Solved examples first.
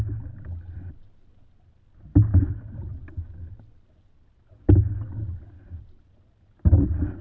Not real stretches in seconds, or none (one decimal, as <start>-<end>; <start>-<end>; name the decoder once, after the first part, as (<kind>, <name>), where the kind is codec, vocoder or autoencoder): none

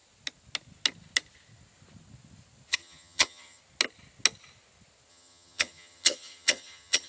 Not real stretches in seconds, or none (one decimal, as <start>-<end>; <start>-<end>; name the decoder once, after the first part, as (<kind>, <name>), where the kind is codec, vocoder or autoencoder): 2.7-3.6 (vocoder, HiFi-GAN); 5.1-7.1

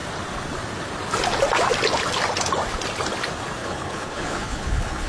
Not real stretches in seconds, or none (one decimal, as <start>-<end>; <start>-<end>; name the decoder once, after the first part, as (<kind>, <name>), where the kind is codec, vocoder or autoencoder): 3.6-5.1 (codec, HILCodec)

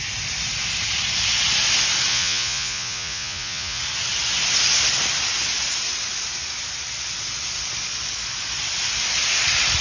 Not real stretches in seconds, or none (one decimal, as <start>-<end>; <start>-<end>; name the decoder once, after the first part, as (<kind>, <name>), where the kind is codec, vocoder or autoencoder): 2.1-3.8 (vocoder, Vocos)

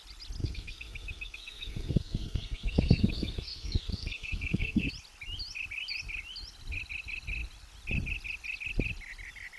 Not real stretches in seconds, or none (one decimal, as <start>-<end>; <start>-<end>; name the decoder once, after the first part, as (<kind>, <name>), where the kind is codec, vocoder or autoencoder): 0.4-4.9 (codec, SNAC)

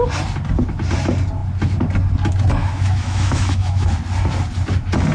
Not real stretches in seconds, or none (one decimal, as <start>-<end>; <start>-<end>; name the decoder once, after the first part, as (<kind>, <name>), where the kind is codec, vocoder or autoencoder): 2.6-3.9 (autoencoder, DAC-VAE)

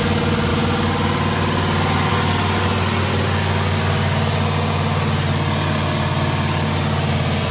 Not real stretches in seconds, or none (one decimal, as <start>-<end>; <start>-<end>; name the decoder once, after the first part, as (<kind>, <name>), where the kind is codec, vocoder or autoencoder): none

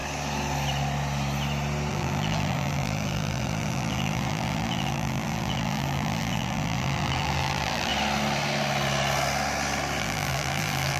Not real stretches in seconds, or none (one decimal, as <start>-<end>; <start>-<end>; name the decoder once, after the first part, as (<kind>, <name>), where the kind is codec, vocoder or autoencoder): 1.9-7.9 (vocoder, BigVGAN v2); 10.0-11.0